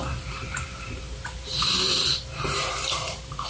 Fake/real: fake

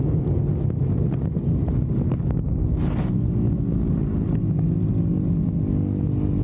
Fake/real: real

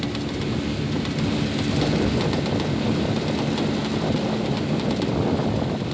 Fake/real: real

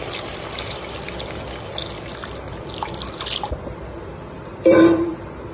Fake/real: real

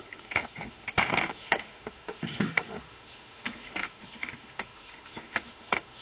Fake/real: fake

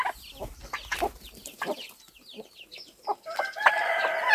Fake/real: real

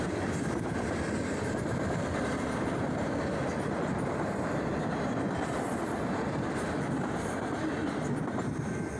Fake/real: fake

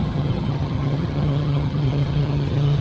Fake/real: fake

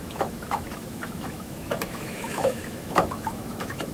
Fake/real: fake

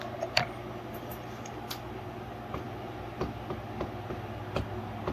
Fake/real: real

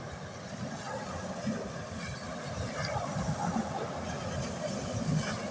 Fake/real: real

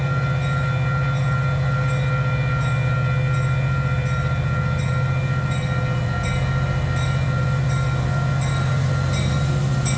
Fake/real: real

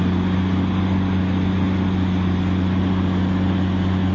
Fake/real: real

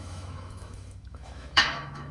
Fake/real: fake